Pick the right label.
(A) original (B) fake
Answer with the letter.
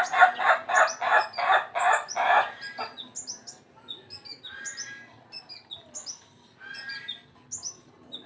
A